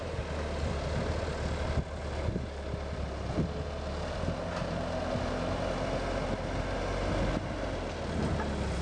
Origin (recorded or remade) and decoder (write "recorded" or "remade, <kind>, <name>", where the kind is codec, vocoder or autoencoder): recorded